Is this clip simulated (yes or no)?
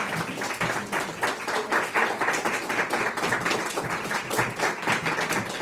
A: no